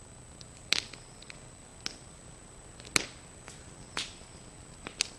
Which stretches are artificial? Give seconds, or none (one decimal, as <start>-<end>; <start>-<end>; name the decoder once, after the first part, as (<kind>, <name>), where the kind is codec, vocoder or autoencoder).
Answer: none